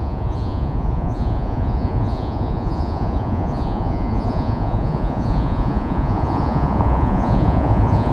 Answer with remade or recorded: remade